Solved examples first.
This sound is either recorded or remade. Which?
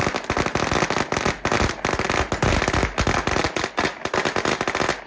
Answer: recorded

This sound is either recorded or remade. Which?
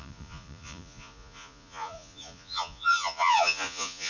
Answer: remade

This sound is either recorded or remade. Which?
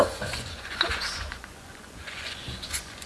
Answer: remade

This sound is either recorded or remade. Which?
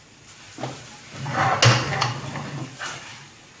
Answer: recorded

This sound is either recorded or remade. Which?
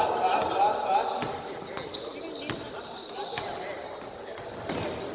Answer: recorded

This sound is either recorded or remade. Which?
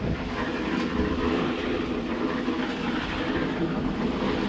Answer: recorded